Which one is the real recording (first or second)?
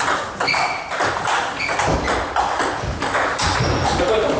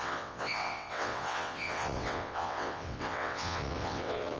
first